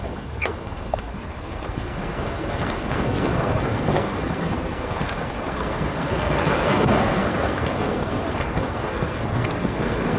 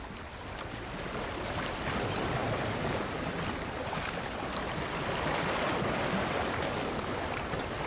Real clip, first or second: second